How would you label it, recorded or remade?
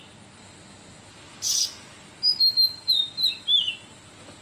recorded